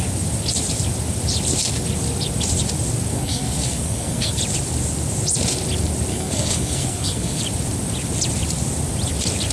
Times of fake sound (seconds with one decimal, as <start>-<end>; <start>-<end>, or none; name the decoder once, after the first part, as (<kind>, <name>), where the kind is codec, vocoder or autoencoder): 3.1-4.4 (codec, SNAC); 6.1-7.4